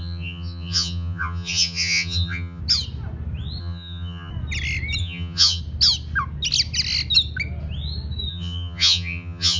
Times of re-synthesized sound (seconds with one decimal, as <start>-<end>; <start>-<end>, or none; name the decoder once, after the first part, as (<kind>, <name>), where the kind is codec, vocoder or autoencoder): 0.0-2.6 (vocoder, HiFi-GAN); 3.6-4.3; 5.0-5.6; 8.3-9.6